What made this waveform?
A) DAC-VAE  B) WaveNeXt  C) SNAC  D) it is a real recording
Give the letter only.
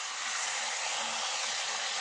D